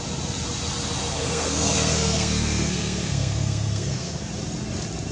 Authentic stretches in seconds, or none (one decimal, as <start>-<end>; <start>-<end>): 0.0-1.2; 4.3-5.1